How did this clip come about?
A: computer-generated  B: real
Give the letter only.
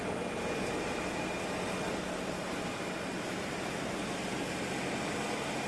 B